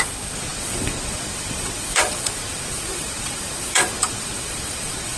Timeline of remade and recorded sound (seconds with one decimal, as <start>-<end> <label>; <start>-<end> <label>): 0.0-5.2 remade